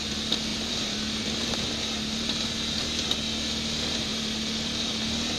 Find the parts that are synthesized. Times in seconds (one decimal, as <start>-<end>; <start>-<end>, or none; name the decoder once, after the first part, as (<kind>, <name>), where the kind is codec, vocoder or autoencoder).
0.5-1.7 (vocoder, BigVGAN v2); 4.1-4.9